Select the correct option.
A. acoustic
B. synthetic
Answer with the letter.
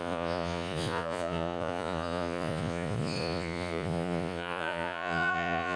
B